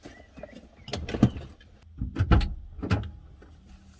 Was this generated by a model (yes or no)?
no